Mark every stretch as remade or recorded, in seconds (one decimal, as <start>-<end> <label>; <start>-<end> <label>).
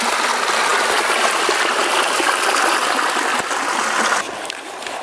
0.0-5.0 recorded